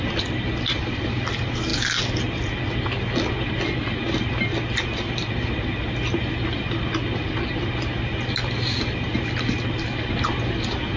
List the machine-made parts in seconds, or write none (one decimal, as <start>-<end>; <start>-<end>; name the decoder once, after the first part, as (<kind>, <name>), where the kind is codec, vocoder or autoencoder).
none